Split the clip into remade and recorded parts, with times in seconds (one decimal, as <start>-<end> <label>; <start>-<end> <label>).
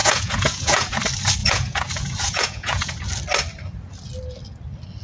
0.0-1.0 remade; 1.0-1.4 recorded; 1.4-3.0 remade; 3.0-5.0 recorded